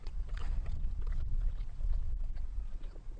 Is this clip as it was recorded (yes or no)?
no